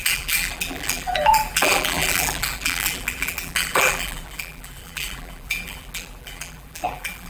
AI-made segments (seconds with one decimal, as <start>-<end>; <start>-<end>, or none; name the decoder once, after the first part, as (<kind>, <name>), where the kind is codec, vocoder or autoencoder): 0.0-7.3 (vocoder, BigVGAN v2)